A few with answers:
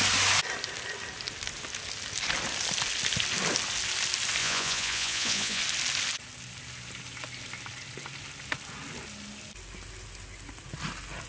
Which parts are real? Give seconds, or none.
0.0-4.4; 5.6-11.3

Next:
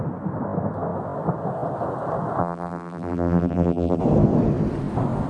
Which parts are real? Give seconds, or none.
0.0-2.4; 4.0-5.3

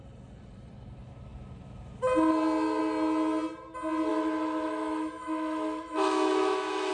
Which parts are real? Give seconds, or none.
0.0-4.1